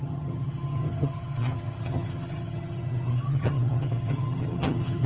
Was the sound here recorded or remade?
remade